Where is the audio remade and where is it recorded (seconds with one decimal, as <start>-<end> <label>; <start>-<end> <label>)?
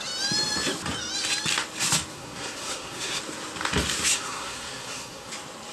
0.0-2.1 recorded; 2.1-3.2 remade; 3.2-4.1 recorded; 4.1-5.3 remade; 5.3-5.7 recorded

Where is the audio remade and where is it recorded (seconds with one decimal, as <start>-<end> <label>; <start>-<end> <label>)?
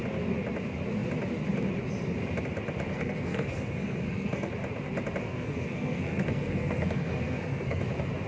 0.0-2.9 recorded; 2.9-4.5 remade; 4.5-5.2 recorded; 5.2-7.8 remade; 7.8-8.3 recorded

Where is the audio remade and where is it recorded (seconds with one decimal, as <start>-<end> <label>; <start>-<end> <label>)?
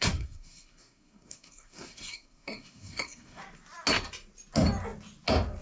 0.0-3.4 remade; 3.4-5.6 recorded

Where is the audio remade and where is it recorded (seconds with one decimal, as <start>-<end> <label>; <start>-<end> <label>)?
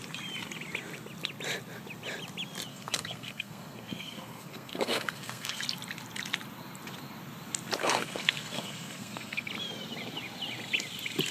0.0-2.7 recorded; 2.7-5.6 remade; 5.6-7.8 recorded; 7.8-9.5 remade; 9.5-11.3 recorded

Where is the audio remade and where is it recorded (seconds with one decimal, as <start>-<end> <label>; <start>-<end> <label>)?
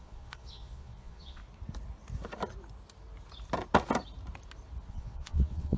0.0-1.4 remade; 1.4-4.9 recorded; 4.9-5.8 remade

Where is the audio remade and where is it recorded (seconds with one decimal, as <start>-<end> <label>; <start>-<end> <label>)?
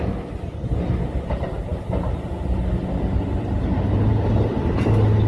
0.0-5.3 recorded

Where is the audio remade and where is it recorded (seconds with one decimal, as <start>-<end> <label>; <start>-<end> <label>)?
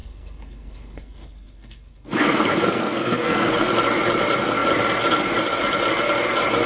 0.0-3.7 remade; 3.7-6.7 recorded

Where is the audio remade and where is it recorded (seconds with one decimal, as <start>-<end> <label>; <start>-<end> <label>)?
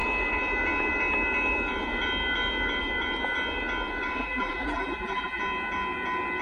0.0-4.2 recorded; 4.2-5.4 remade; 5.4-6.4 recorded